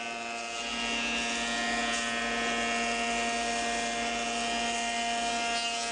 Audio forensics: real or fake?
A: real